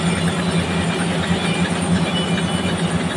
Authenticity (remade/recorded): recorded